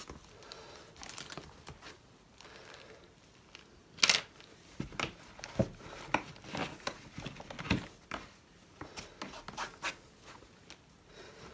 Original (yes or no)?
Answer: yes